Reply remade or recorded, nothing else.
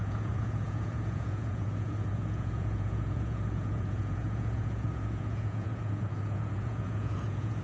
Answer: remade